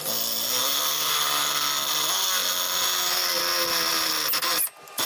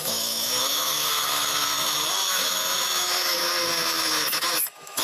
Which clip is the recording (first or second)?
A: first